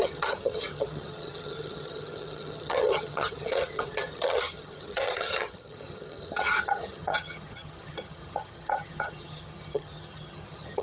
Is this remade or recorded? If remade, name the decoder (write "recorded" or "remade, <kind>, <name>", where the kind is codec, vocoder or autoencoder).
remade, vocoder, HiFi-GAN